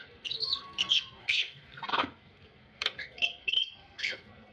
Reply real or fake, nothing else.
fake